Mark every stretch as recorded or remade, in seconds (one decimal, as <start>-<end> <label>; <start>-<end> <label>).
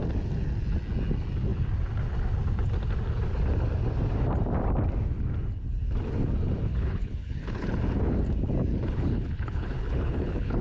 0.0-6.7 recorded; 6.7-7.7 remade; 7.7-8.7 recorded; 8.7-10.6 remade